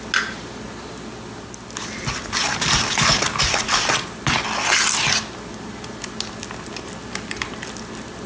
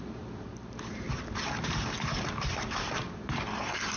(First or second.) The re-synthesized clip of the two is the second